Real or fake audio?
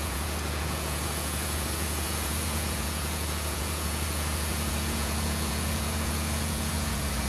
fake